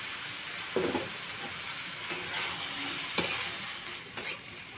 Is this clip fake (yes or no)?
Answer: no